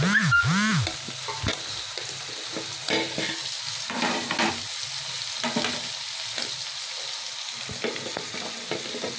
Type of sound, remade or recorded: recorded